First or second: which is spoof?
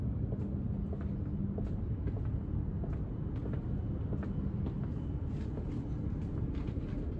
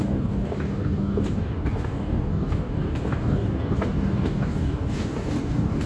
second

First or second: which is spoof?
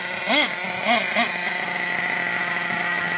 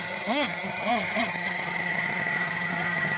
second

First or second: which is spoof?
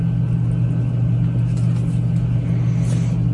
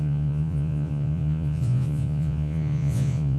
second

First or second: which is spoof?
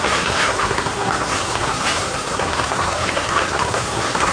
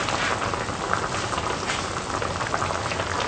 first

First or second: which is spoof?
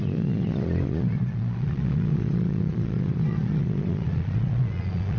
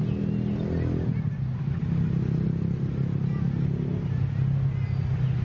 first